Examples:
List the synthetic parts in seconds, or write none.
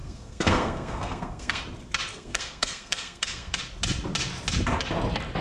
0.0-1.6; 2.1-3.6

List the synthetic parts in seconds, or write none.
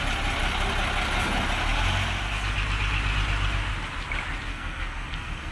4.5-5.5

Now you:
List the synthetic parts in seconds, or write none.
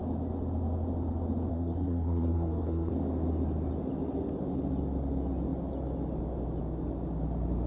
1.5-2.9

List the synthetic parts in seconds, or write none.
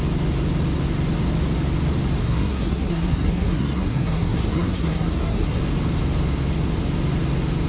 2.2-5.6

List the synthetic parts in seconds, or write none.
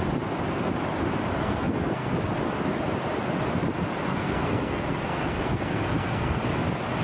1.4-2.1; 4.1-6.4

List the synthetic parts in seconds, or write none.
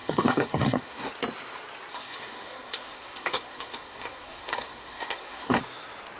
0.0-1.1; 1.9-5.6